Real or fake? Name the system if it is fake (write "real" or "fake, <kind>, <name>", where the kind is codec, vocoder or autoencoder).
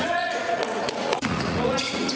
fake, vocoder, Vocos